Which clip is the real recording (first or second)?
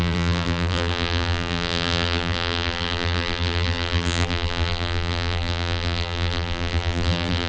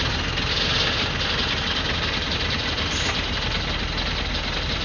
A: second